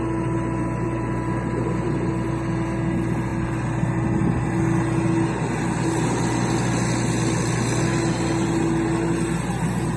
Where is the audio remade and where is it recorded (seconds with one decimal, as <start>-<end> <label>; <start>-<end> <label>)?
0.0-10.0 recorded